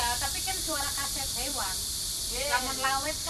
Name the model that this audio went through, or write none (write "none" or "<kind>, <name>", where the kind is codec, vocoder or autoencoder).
vocoder, BigVGAN v2